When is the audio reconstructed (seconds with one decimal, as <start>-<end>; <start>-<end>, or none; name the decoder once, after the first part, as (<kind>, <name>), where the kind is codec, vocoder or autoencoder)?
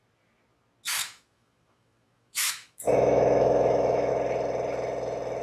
1.0-4.1 (autoencoder, DAC-VAE)